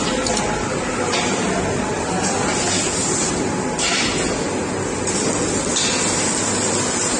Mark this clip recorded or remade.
recorded